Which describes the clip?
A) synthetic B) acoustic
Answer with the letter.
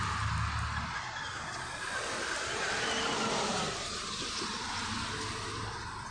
B